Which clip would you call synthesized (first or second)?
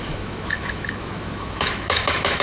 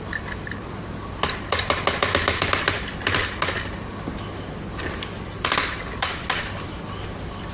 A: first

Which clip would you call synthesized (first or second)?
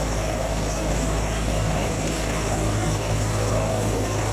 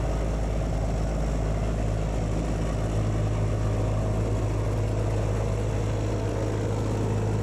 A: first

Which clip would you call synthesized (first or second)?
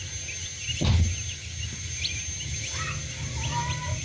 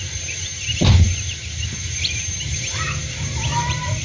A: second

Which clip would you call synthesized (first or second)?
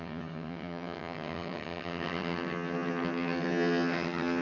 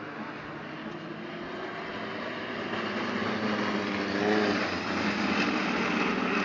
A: first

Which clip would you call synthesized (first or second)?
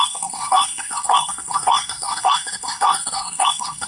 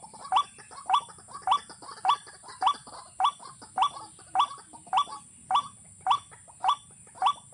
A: first